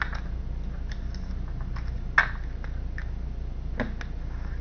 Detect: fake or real real